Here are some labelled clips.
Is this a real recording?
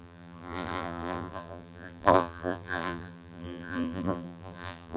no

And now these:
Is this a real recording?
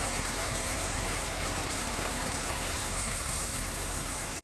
no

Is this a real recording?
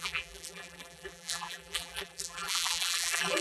no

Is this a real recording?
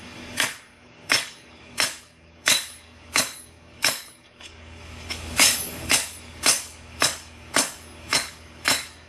no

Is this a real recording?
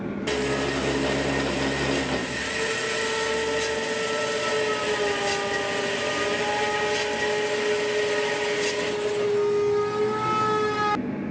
yes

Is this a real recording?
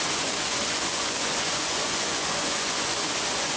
no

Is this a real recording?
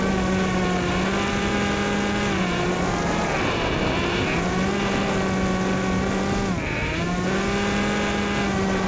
yes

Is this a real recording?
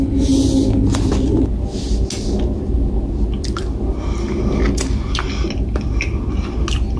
yes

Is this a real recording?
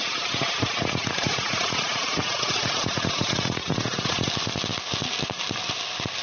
yes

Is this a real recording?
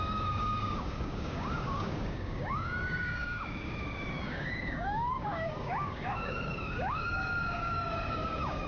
no